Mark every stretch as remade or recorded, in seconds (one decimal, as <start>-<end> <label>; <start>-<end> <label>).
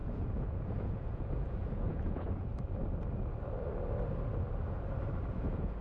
0.0-2.5 remade; 2.5-5.3 recorded; 5.3-5.8 remade